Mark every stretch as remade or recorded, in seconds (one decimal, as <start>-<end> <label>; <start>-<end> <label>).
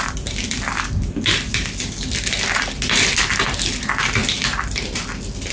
0.0-5.5 recorded